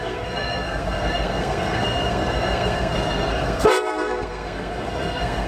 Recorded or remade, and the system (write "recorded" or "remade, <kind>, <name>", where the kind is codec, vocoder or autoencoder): remade, codec, SNAC